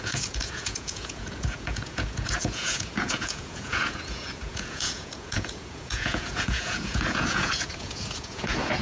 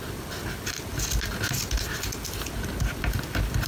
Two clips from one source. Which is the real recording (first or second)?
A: second